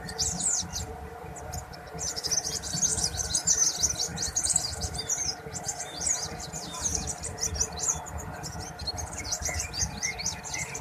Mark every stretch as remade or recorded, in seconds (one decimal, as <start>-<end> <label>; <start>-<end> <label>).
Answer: 0.0-10.8 recorded